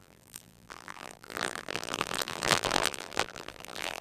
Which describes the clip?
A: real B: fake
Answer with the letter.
B